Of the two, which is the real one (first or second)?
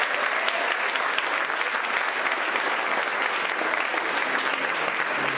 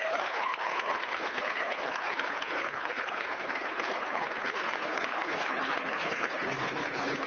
first